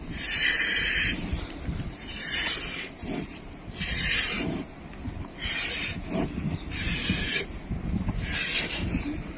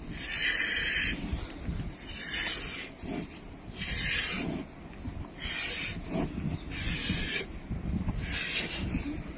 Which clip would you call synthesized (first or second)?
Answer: first